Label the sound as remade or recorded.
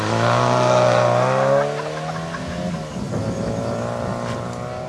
recorded